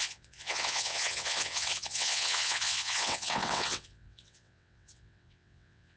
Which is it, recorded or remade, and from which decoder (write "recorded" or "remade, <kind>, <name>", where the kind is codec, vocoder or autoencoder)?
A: remade, vocoder, WaveNeXt